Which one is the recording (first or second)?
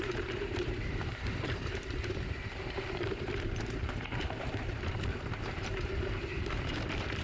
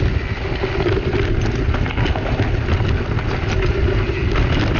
second